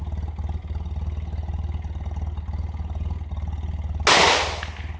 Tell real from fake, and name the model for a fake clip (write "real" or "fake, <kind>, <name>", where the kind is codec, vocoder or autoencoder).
real